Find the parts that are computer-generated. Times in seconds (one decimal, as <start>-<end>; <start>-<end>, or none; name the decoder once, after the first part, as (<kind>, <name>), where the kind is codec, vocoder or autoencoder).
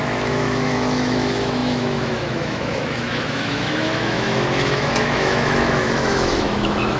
0.0-7.0 (autoencoder, DAC-VAE)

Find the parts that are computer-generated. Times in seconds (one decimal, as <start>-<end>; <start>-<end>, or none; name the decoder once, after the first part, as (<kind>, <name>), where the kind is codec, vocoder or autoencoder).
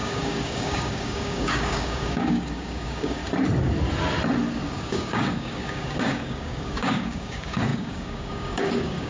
0.0-3.2 (codec, DAC); 4.5-9.1